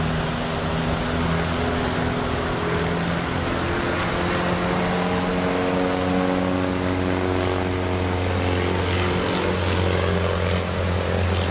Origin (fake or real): real